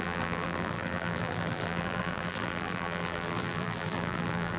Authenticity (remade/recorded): remade